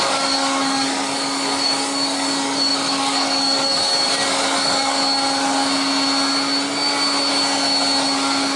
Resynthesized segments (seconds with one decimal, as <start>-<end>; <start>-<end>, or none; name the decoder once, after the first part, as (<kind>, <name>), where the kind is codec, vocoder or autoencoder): 0.0-5.0 (codec, DAC)